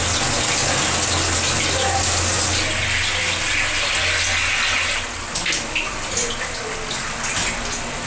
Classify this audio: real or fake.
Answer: real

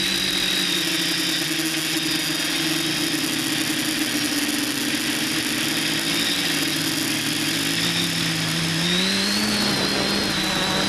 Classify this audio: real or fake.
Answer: real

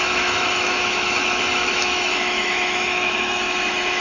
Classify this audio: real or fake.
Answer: fake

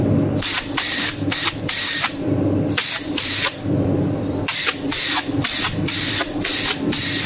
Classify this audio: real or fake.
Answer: fake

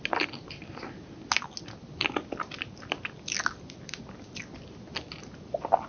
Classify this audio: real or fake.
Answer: real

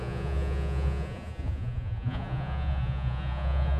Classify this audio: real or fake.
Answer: fake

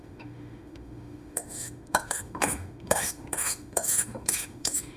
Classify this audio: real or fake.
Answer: fake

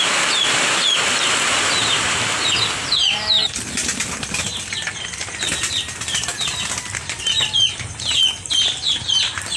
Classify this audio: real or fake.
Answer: real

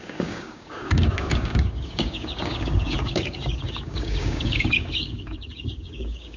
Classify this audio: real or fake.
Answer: fake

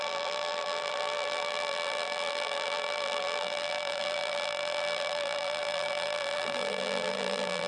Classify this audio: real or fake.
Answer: fake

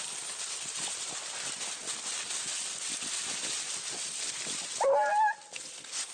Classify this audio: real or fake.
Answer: real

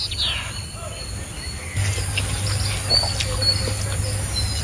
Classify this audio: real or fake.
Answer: real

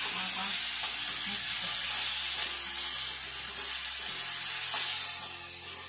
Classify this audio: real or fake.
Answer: real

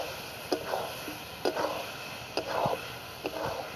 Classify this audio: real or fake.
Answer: real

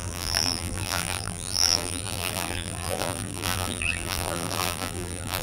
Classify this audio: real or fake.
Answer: fake